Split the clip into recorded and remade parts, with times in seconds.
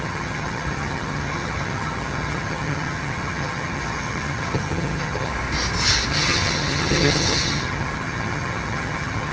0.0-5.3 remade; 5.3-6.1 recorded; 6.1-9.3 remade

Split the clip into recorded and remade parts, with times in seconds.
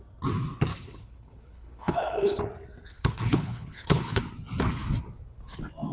0.0-0.7 recorded; 0.7-2.4 remade; 2.4-2.9 recorded; 2.9-4.2 remade; 4.2-5.9 recorded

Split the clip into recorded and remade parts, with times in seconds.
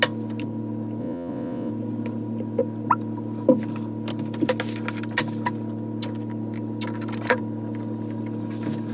0.0-1.0 recorded; 1.0-1.7 remade; 1.7-8.9 recorded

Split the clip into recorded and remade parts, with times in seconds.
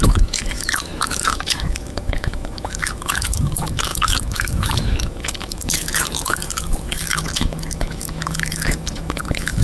0.0-9.6 remade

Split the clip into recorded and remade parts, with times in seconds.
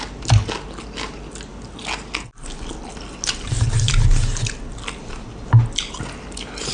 0.0-6.7 recorded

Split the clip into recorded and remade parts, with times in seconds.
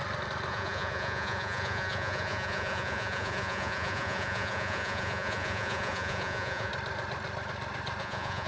0.0-0.5 recorded; 0.5-6.7 remade; 6.7-8.0 recorded; 8.0-8.5 remade